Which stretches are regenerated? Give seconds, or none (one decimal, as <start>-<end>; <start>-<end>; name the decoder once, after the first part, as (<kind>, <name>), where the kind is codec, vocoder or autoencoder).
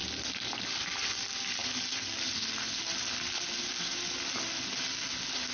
none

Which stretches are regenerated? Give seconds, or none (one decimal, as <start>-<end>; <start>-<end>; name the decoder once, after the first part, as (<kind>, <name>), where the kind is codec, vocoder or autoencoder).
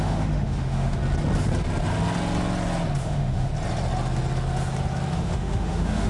0.0-1.0 (autoencoder, DAC-VAE); 3.0-3.5; 5.1-6.1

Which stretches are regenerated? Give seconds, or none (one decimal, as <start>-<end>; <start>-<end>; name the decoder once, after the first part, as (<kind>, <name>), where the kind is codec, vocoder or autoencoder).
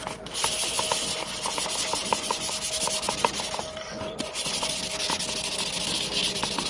2.0-2.5 (vocoder, Vocos); 3.9-4.8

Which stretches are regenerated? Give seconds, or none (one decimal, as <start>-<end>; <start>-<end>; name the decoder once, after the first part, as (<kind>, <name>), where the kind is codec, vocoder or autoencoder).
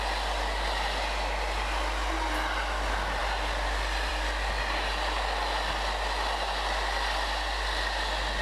none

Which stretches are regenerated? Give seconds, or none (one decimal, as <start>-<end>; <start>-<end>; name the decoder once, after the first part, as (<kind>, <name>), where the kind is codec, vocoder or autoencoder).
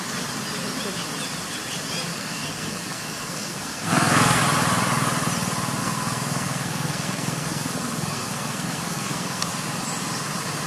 2.1-4.4 (codec, SNAC); 5.8-9.5